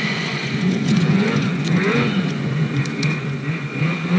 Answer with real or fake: fake